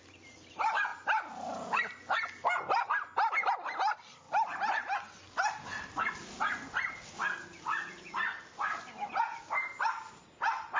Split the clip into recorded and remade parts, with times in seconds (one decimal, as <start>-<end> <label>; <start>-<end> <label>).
0.0-10.8 recorded